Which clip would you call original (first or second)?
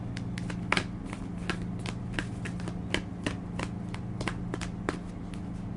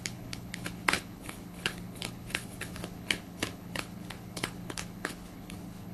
first